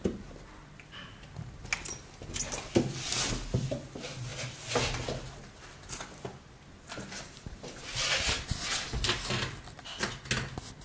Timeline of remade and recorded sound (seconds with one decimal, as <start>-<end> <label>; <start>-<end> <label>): 0.0-10.8 recorded